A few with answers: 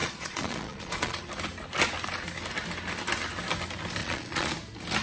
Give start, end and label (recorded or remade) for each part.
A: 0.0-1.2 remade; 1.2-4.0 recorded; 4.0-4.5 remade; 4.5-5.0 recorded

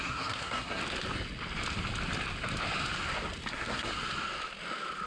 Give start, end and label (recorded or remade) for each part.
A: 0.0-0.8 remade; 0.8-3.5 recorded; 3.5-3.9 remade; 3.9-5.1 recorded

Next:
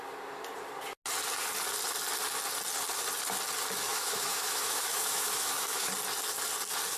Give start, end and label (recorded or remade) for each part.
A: 0.0-3.9 recorded; 3.9-5.9 remade; 5.9-7.0 recorded